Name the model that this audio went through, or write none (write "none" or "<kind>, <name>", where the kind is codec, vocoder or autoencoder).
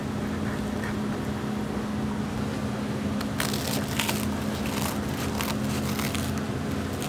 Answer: none